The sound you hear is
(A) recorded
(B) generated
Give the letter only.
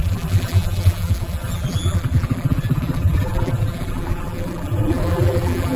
B